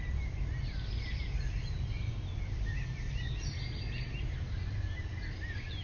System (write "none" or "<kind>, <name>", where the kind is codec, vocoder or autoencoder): vocoder, BigVGAN v2